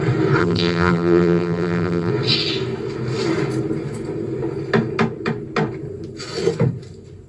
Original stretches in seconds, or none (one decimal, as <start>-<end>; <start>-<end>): 0.0-0.4; 2.1-7.3